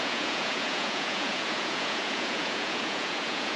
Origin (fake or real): fake